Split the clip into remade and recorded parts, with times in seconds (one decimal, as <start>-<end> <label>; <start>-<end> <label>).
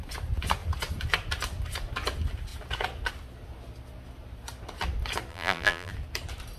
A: 0.0-5.3 recorded; 5.3-5.9 remade; 5.9-6.6 recorded